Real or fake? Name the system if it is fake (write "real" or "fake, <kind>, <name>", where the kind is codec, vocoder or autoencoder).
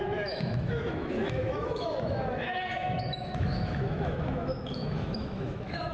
fake, autoencoder, DAC-VAE